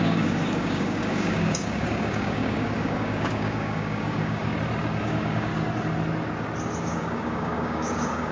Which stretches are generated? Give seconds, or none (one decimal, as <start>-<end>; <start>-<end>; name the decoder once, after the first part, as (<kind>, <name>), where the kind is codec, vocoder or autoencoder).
0.0-4.5 (codec, DAC); 5.0-5.5; 6.8-8.3